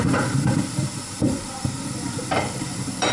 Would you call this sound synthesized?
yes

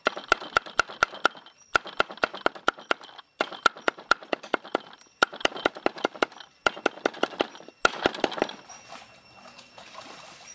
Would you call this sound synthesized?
no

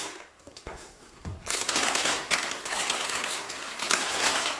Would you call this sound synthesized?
yes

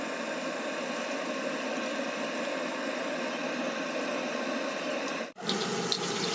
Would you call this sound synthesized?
no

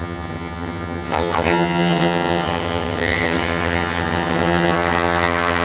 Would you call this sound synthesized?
yes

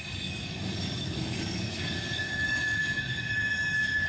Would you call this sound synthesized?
yes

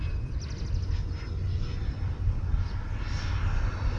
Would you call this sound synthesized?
no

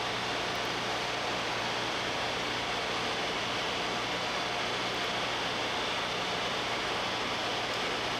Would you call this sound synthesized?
no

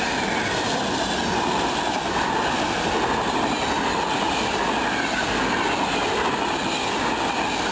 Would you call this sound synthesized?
no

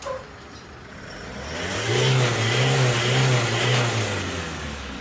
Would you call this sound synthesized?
no